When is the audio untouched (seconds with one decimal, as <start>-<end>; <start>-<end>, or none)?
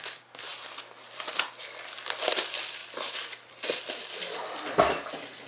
0.0-5.5